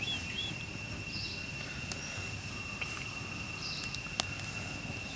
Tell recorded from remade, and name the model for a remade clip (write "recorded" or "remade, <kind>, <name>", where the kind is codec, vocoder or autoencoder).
recorded